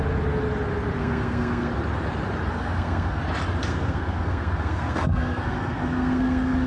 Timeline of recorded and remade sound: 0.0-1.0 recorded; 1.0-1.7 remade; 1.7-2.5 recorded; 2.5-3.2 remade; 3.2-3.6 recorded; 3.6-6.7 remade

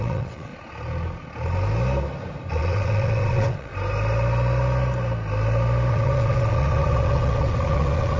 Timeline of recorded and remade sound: 0.0-0.5 remade; 0.5-2.5 recorded; 2.5-3.7 remade; 3.7-5.9 recorded; 5.9-8.2 remade

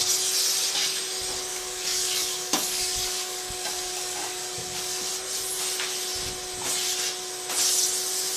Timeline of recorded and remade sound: 0.0-1.5 recorded; 1.5-5.1 remade; 5.1-8.4 recorded

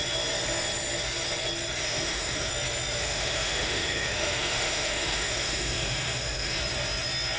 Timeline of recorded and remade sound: 0.0-1.8 recorded; 1.8-2.5 remade; 2.5-3.0 recorded; 3.0-6.6 remade; 6.6-7.4 recorded

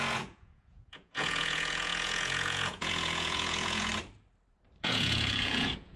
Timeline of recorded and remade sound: 0.0-3.9 remade; 3.9-4.8 recorded; 4.8-6.0 remade

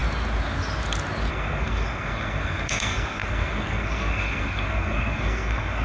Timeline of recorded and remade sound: 0.0-1.3 recorded; 1.3-5.8 remade

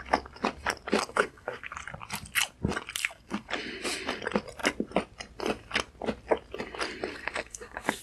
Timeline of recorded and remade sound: 0.0-1.1 recorded; 1.1-1.7 remade; 1.7-3.0 recorded; 3.0-3.5 remade; 3.5-7.1 recorded; 7.1-8.0 remade